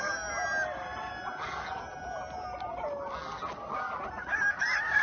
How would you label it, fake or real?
real